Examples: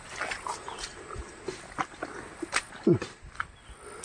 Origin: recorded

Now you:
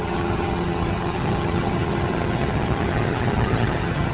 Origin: remade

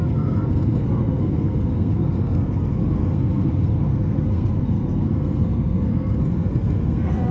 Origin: remade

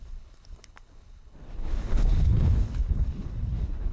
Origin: remade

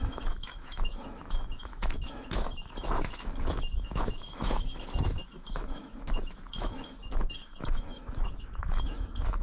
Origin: remade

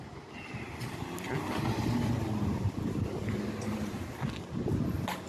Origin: recorded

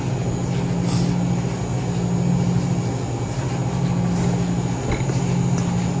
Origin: recorded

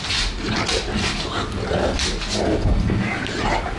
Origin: recorded